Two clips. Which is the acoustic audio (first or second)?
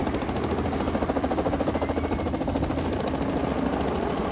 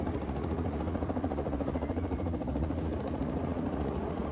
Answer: first